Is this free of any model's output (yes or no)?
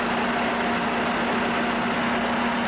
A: yes